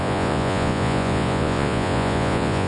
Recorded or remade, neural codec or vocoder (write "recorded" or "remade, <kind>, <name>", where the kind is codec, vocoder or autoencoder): remade, vocoder, Vocos